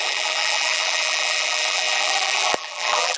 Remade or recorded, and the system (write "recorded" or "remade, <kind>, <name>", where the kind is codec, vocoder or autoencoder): remade, vocoder, BigVGAN v2